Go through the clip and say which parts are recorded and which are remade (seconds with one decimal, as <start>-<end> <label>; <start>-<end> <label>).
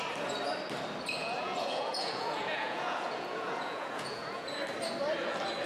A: 0.0-1.2 recorded; 1.2-4.6 remade; 4.6-5.7 recorded